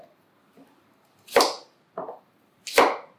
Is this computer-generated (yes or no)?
no